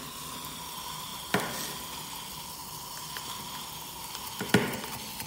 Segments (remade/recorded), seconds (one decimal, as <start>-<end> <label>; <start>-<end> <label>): 0.0-5.3 recorded